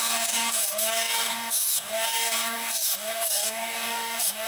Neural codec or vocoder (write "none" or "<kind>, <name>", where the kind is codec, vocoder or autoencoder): codec, DAC